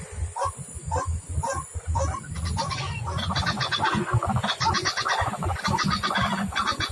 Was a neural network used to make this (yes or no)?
yes